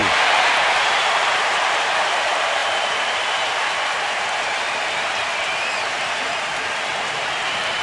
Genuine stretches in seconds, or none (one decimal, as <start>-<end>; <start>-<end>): 5.2-6.9